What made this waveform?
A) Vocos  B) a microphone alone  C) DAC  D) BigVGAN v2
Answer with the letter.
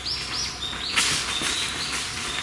B